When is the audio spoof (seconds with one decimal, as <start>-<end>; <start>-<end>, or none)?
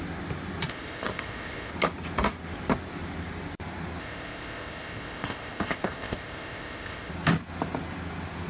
0.7-1.7; 4.0-7.1